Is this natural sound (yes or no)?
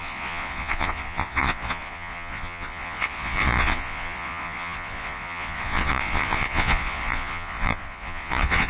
no